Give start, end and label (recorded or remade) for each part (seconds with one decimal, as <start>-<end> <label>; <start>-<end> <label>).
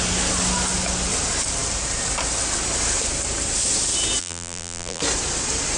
0.0-4.2 recorded; 4.2-5.0 remade; 5.0-5.8 recorded